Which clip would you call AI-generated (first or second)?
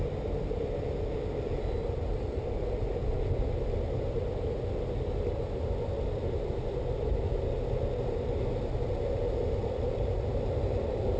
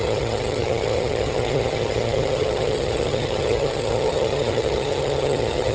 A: second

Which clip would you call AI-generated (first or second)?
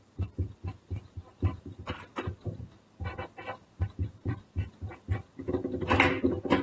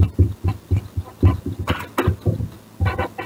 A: first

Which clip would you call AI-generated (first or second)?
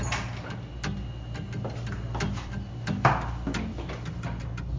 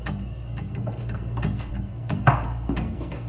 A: second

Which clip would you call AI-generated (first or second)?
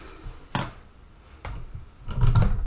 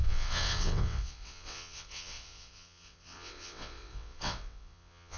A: second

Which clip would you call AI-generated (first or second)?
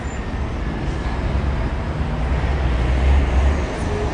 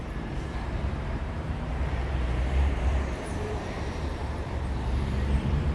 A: second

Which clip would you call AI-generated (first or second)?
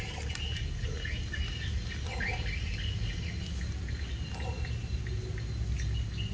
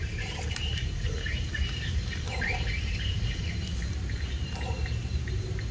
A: second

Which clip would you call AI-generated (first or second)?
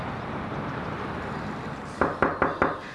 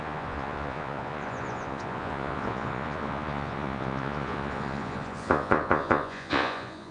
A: second